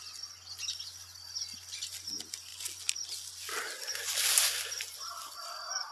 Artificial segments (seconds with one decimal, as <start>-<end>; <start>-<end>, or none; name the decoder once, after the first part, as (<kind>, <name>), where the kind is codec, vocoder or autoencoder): none